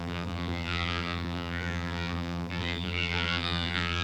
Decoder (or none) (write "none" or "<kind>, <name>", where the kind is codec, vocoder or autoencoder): vocoder, BigVGAN v2